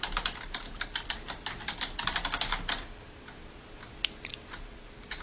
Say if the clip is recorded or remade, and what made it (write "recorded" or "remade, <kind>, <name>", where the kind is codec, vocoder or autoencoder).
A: recorded